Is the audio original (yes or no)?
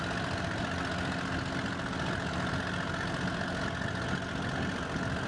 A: yes